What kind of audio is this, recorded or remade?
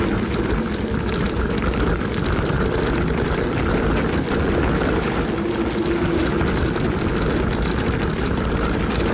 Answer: recorded